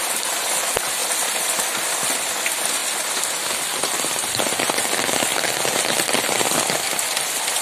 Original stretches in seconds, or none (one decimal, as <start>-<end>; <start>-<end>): 0.0-1.0; 1.6-7.6